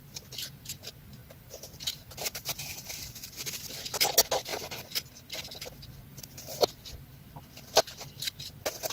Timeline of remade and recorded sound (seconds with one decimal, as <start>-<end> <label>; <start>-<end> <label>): 0.0-1.2 recorded; 1.2-2.9 remade; 2.9-6.1 recorded; 6.1-6.6 remade; 6.6-8.9 recorded